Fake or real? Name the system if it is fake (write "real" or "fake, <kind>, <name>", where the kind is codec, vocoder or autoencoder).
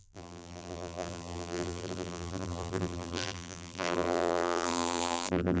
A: fake, vocoder, BigVGAN v2